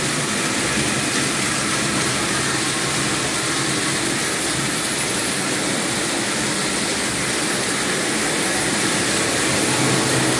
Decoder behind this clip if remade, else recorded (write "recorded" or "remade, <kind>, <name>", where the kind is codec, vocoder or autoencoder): recorded